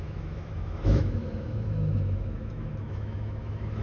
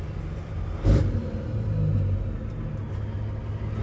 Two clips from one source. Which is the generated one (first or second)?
first